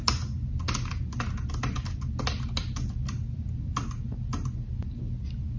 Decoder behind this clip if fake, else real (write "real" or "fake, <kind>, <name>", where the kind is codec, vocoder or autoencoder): real